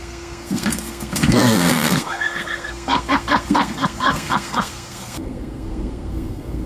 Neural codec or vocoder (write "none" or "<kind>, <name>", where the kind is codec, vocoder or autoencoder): codec, SNAC